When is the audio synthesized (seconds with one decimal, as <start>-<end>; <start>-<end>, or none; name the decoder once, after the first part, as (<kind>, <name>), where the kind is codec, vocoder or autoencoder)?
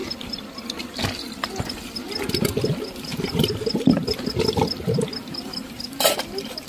0.0-1.0 (vocoder, BigVGAN v2); 3.1-6.7